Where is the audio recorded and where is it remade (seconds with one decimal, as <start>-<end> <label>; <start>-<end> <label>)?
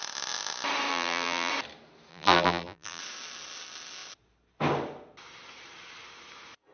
0.0-0.9 recorded; 0.9-1.5 remade; 1.5-2.1 recorded; 2.1-3.0 remade; 3.0-6.7 recorded